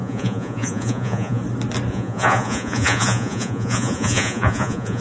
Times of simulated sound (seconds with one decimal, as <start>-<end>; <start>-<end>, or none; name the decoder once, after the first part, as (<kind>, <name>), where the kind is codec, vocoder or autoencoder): 0.0-1.4 (vocoder, Vocos); 1.9-5.0